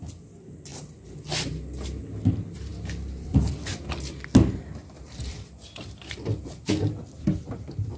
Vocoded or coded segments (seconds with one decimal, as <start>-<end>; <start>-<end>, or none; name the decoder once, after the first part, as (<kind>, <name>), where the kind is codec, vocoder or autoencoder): 0.7-2.0 (vocoder, BigVGAN v2); 2.7-3.7; 4.8-6.7